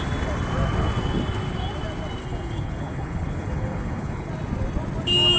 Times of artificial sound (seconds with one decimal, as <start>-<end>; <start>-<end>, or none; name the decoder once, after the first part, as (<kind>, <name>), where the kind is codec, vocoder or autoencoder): 2.2-4.3 (codec, HILCodec)